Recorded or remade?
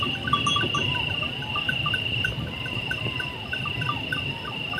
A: recorded